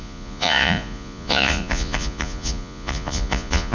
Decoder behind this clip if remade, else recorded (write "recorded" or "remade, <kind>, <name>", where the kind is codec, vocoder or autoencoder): remade, vocoder, Vocos